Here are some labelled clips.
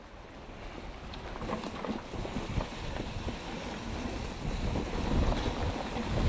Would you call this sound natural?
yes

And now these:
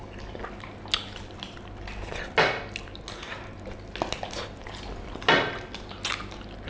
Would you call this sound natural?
yes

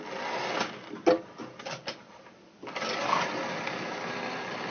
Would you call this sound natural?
yes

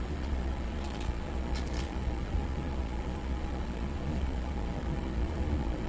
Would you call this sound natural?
no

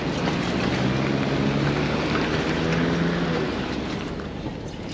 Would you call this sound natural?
yes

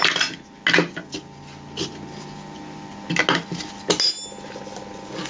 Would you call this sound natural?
yes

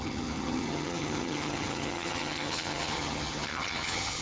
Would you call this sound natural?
no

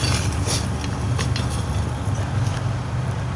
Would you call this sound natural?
yes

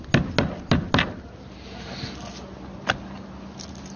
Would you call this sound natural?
yes